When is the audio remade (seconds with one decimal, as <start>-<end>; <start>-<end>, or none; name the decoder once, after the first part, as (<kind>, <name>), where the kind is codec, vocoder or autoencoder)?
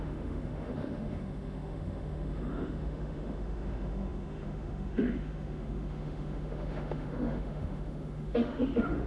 0.0-9.1 (autoencoder, DAC-VAE)